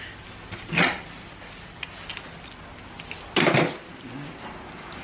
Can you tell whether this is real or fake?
real